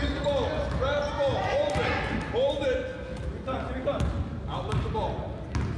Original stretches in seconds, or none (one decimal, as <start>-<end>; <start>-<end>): 0.0-5.8